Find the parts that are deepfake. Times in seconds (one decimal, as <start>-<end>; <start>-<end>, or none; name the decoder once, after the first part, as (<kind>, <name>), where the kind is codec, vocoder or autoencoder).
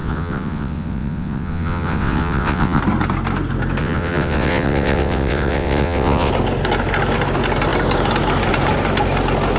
0.0-2.8 (vocoder, WaveNeXt); 3.8-6.3